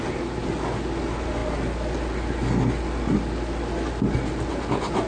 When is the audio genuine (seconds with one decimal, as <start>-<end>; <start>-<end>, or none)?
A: 0.0-5.1